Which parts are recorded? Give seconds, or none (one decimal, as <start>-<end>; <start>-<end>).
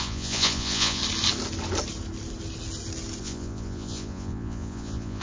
1.0-3.2